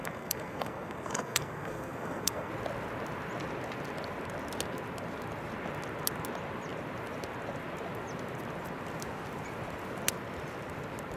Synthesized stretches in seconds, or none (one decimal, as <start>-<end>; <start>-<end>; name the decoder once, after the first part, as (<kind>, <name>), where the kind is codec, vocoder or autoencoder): 0.0-2.5 (codec, SNAC)